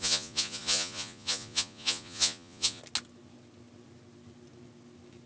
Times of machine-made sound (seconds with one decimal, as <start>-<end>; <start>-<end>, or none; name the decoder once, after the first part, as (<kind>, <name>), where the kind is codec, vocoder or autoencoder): 0.0-2.8 (vocoder, Vocos)